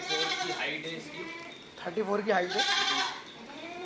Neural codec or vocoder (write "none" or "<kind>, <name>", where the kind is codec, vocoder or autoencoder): vocoder, BigVGAN v2